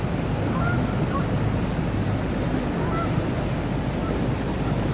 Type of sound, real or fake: real